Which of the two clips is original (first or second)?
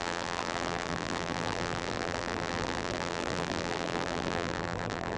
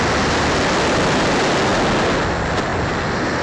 second